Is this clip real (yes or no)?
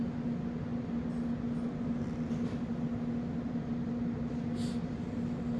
yes